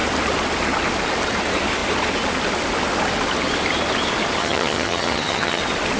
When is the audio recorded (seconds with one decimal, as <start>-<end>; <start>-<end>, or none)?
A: 0.0-4.4; 5.6-6.0